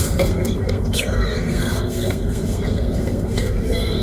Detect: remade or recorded remade